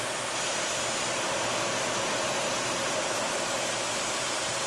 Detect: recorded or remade recorded